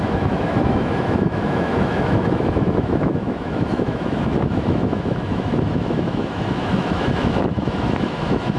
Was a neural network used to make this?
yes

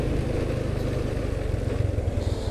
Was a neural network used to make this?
no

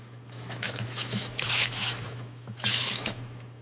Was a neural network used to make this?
yes